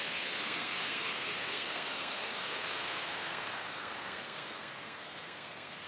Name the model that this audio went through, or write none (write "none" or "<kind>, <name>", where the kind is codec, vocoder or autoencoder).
codec, SNAC